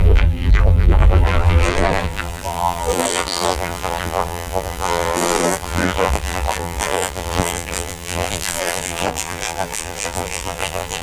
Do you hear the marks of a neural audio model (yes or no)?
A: yes